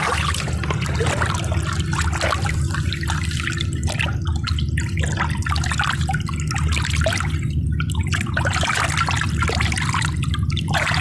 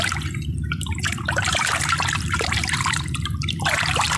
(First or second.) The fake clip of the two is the second